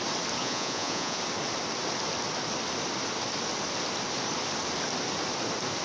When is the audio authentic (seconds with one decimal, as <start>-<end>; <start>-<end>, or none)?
0.0-0.4; 1.2-5.8